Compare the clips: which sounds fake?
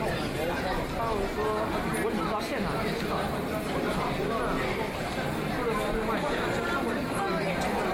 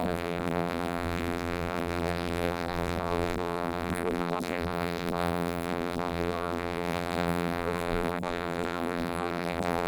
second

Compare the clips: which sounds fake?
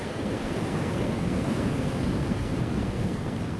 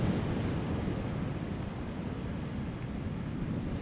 first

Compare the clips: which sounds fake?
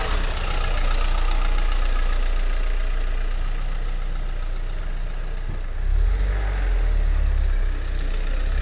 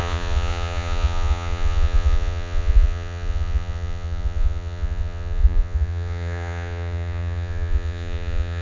second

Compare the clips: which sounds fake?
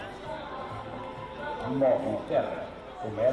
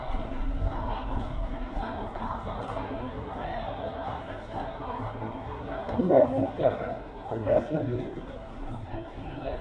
second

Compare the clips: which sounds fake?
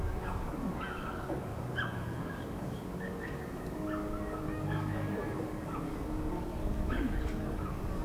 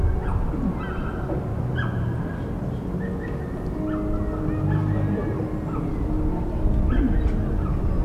first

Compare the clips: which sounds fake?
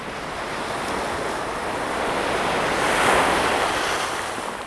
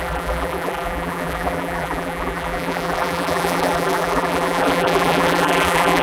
second